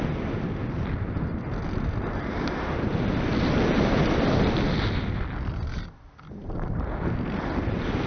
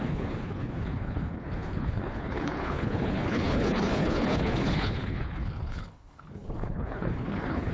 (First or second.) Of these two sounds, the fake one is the second